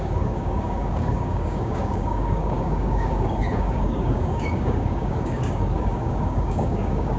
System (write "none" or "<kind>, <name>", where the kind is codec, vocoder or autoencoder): codec, DAC